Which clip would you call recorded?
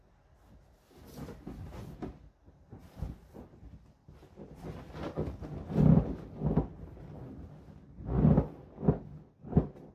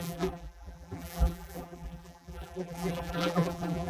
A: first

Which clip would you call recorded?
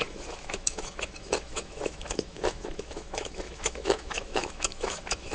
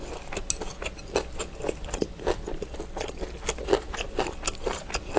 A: second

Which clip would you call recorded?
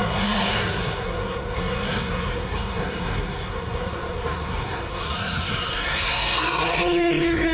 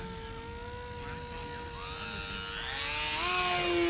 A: second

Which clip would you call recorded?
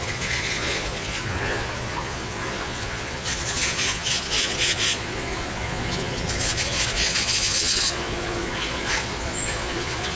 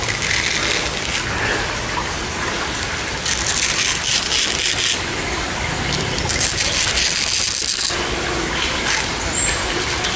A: second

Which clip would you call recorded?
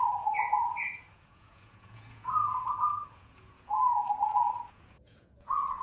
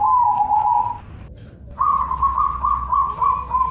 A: second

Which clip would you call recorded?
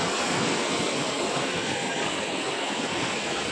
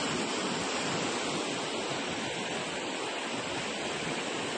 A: second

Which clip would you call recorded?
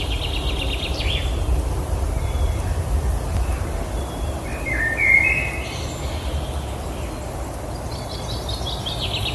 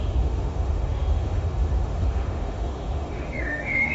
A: first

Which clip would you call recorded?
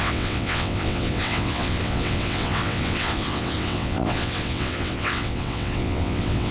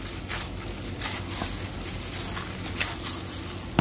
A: second